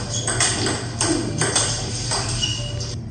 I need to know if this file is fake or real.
real